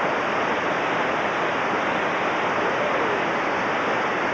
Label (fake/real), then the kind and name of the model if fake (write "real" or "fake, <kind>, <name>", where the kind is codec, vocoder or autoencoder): real